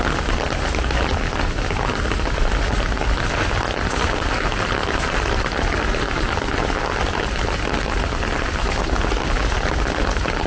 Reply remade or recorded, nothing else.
recorded